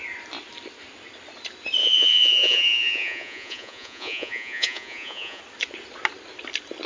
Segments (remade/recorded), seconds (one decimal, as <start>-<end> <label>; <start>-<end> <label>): 0.0-1.8 recorded; 1.8-5.4 remade; 5.4-6.9 recorded